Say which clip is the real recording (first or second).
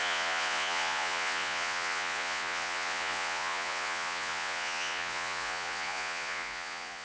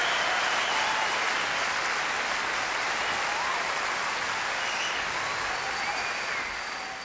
second